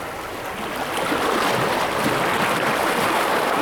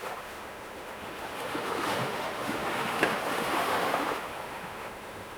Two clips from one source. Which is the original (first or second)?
first